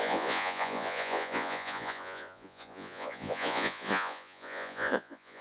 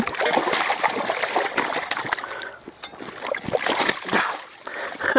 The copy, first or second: first